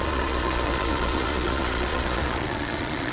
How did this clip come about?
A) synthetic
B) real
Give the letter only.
A